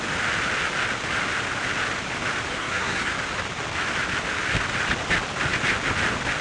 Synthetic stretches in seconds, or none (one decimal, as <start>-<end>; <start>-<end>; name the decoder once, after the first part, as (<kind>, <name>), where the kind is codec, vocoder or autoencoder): 2.5-3.1 (codec, SNAC)